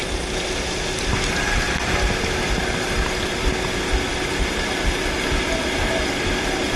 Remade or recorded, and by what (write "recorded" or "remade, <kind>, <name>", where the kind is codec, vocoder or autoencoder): recorded